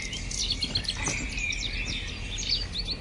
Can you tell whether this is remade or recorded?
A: recorded